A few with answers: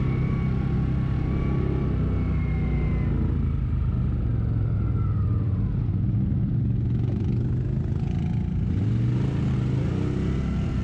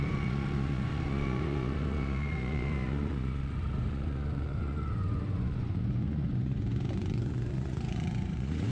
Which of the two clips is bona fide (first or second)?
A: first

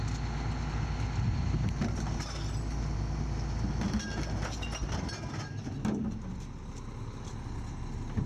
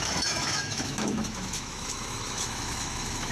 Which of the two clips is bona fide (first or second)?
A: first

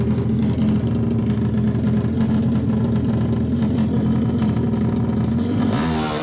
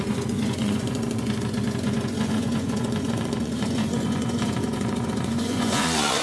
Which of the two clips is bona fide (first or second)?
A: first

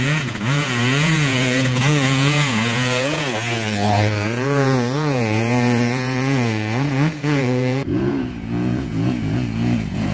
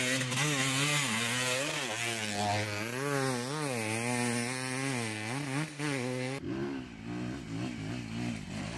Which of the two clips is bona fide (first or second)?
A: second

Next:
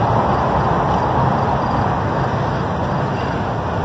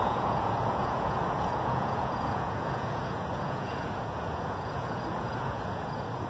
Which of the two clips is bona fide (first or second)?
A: first